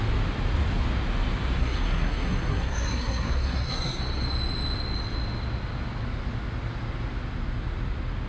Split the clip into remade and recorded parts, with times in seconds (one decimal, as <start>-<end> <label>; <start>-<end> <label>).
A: 0.0-1.6 recorded; 1.6-4.0 remade; 4.0-8.3 recorded